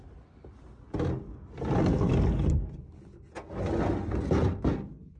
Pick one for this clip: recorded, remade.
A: recorded